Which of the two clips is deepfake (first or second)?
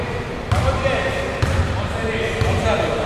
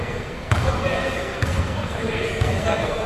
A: second